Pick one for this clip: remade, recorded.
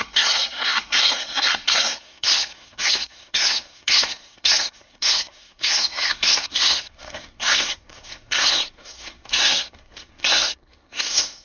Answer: remade